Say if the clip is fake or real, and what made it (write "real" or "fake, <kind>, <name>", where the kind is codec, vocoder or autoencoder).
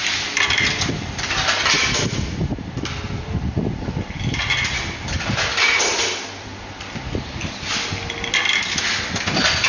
real